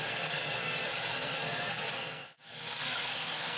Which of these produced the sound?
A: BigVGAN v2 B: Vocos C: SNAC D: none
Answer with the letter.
C